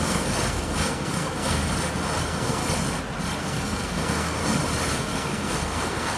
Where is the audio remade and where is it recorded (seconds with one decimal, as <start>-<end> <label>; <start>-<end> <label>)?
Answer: 0.0-1.6 remade; 1.6-2.2 recorded; 2.2-2.6 remade; 2.6-3.4 recorded; 3.4-4.4 remade; 4.4-4.9 recorded; 4.9-6.2 remade